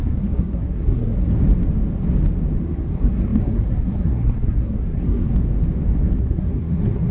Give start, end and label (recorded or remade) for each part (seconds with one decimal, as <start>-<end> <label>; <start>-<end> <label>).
0.0-1.3 remade; 1.3-2.6 recorded; 2.6-5.3 remade; 5.3-6.2 recorded; 6.2-7.1 remade